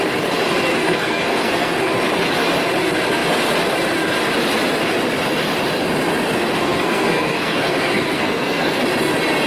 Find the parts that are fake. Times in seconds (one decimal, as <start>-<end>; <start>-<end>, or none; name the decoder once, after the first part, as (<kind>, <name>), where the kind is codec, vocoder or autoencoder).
0.8-1.8 (codec, SNAC); 6.6-8.8